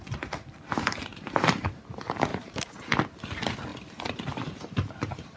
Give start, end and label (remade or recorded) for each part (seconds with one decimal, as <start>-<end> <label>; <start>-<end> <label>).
0.0-1.1 recorded; 1.1-1.8 remade; 1.8-2.3 recorded; 2.3-2.9 remade; 2.9-3.7 recorded; 3.7-5.4 remade